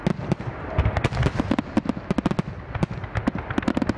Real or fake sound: real